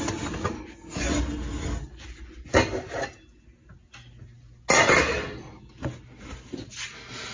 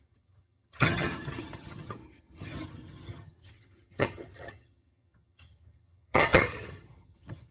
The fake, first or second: second